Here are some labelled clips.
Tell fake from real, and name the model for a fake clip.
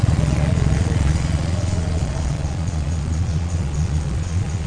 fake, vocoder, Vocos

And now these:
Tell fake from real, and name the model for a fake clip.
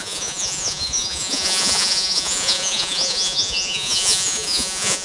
fake, vocoder, Vocos